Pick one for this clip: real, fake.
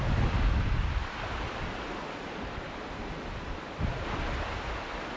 real